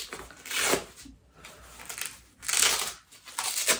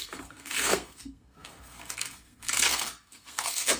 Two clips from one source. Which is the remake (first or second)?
second